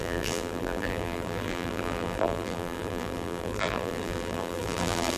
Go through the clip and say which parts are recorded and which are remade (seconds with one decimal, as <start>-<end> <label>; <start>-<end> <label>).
0.0-5.2 remade